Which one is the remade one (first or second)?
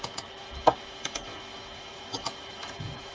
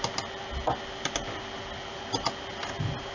first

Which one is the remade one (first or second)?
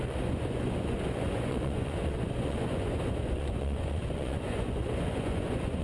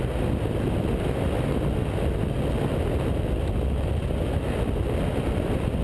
first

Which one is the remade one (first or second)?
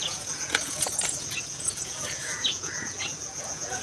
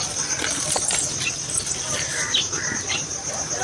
first